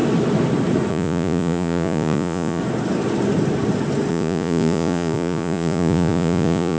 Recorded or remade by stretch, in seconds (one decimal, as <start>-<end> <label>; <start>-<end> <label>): 0.0-0.9 recorded; 0.9-2.6 remade; 2.6-4.1 recorded; 4.1-6.8 remade